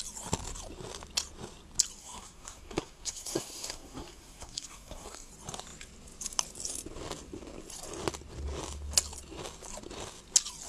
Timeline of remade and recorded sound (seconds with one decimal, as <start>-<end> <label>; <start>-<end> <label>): 0.0-2.0 recorded; 2.0-5.3 remade; 5.3-10.7 recorded